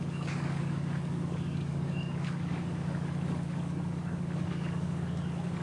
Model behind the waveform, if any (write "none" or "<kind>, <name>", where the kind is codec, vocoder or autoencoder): codec, DAC